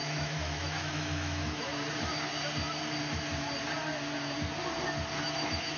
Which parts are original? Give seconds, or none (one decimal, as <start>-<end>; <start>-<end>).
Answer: 1.7-5.2